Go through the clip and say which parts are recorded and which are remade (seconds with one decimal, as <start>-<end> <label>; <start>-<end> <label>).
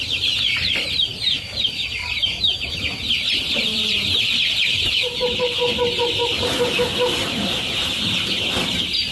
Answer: 0.0-2.0 recorded; 2.0-6.6 remade; 6.6-9.1 recorded